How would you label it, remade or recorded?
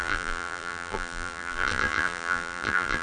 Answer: remade